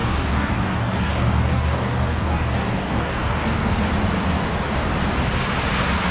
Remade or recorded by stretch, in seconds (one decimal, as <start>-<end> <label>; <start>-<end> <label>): 0.0-3.7 remade; 3.7-6.1 recorded